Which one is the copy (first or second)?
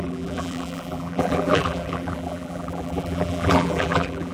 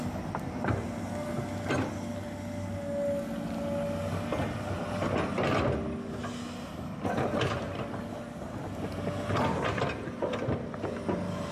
first